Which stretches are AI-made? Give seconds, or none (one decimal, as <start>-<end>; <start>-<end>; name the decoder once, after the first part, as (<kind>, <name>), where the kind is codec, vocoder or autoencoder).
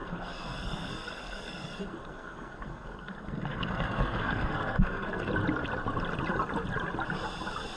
0.0-5.3 (codec, SNAC)